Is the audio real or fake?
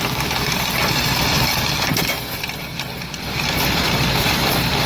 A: fake